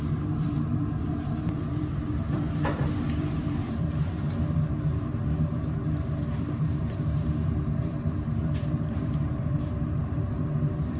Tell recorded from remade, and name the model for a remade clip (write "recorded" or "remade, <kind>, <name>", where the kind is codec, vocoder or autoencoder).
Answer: remade, vocoder, BigVGAN v2